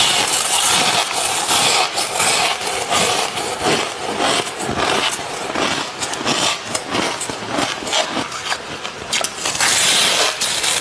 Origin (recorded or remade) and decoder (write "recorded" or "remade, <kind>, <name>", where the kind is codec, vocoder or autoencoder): recorded